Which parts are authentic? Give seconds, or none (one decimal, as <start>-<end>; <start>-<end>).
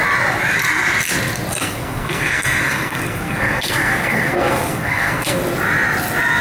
0.0-1.6; 5.4-6.4